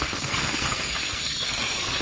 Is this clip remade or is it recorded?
remade